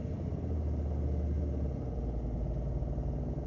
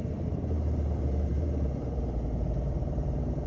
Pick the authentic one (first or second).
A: first